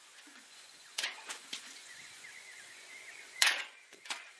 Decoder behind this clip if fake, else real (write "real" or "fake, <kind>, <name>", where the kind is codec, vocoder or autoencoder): fake, vocoder, Vocos